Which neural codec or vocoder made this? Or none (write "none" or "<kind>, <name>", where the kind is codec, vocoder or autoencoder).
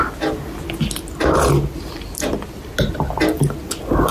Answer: none